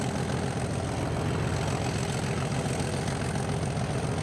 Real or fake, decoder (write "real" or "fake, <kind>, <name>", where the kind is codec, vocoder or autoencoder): real